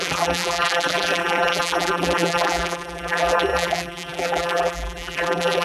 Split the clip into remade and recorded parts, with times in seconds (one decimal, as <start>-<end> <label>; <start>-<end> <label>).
0.0-5.6 remade